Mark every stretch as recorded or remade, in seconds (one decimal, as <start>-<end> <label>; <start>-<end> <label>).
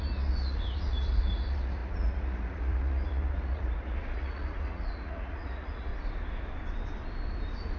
0.0-5.9 remade; 5.9-7.8 recorded